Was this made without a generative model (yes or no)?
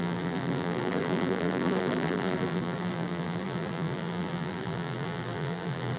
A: no